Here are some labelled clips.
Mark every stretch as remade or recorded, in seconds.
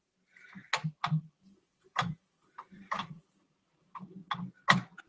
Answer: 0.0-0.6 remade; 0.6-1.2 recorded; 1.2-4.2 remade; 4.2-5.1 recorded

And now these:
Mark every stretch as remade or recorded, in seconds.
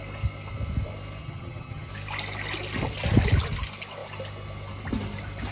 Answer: 0.0-1.2 recorded; 1.2-1.9 remade; 1.9-5.5 recorded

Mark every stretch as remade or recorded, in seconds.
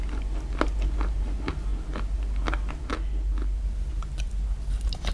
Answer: 0.0-5.1 recorded